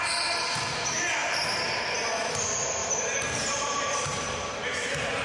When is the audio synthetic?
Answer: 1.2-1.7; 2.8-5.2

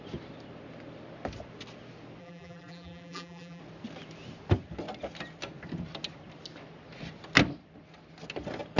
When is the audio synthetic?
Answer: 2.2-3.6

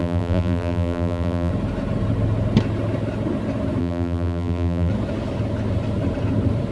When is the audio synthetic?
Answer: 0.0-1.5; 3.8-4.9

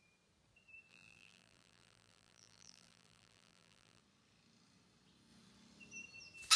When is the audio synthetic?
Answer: 0.9-4.0

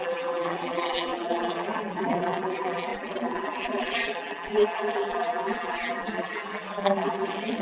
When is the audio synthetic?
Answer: 0.0-7.6